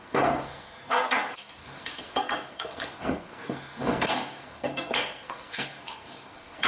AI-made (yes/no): yes